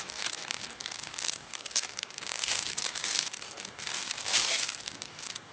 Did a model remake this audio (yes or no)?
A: yes